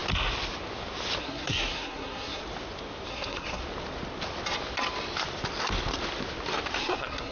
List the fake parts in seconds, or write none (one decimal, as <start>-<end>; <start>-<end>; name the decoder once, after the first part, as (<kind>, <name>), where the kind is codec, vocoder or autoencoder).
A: 1.2-2.4 (codec, SNAC); 3.1-3.6; 6.8-7.3